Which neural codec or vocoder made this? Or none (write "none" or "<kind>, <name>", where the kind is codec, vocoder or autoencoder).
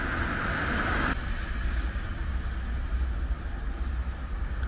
none